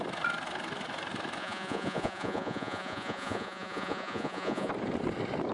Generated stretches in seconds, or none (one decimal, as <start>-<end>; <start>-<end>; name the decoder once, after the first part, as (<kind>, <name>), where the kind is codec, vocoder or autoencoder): 1.4-4.7 (vocoder, Vocos)